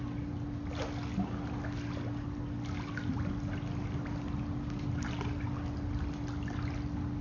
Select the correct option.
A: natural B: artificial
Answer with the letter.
A